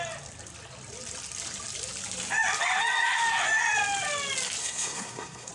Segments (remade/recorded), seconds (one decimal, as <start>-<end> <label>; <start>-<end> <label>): 0.0-4.6 recorded; 4.6-5.5 remade